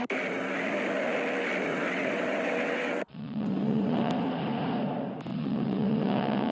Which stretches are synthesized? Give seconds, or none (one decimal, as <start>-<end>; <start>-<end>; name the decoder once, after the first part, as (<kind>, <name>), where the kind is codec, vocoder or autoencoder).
1.7-4.1 (vocoder, WaveNeXt); 5.3-6.5